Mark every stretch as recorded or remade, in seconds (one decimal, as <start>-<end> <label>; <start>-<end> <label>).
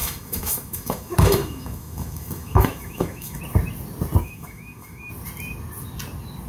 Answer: 0.0-3.4 remade; 3.4-4.2 recorded; 4.2-5.1 remade; 5.1-6.5 recorded